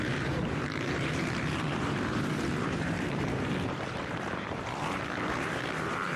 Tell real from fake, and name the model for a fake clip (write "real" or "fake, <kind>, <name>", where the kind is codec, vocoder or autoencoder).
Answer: fake, vocoder, BigVGAN v2